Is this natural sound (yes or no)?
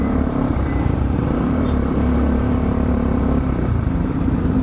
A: no